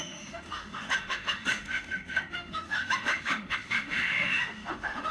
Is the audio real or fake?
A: fake